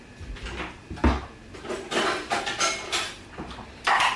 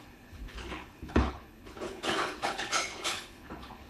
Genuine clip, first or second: first